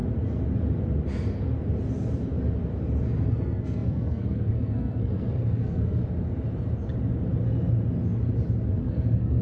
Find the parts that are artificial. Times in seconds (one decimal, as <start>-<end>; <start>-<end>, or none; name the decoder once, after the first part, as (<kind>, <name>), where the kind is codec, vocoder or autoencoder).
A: 3.3-6.0 (codec, SNAC); 8.7-9.4